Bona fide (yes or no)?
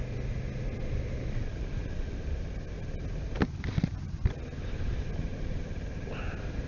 yes